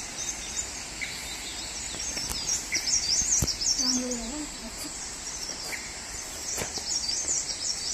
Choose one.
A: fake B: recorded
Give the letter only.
A